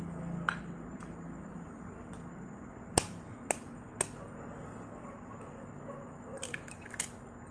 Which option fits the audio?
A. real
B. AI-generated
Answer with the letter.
A